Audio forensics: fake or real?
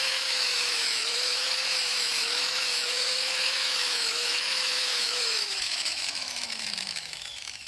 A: fake